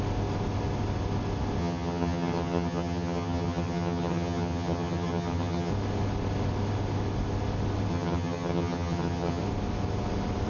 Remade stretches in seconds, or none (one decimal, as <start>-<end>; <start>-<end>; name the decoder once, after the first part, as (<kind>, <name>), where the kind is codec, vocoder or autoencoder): 1.6-5.7 (vocoder, HiFi-GAN); 7.9-9.4